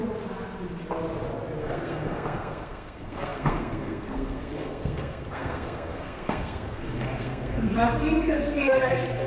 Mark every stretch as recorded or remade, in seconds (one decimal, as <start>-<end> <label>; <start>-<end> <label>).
0.0-1.6 recorded; 1.6-9.3 remade